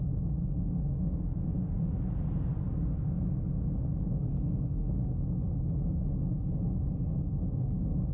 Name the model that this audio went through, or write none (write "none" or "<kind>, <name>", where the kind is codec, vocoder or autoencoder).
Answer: none